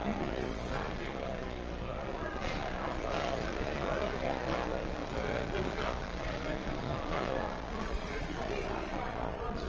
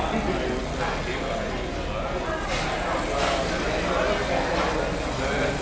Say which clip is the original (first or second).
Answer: second